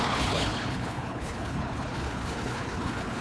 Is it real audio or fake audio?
fake